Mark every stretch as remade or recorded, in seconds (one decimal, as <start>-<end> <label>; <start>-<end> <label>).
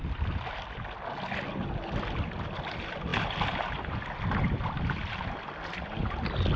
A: 0.0-6.6 recorded